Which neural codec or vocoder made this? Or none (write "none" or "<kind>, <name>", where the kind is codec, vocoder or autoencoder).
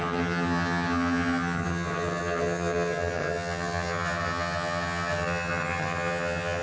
vocoder, HiFi-GAN